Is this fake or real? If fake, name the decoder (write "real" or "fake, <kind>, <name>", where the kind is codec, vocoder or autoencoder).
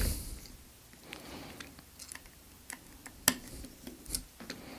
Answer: real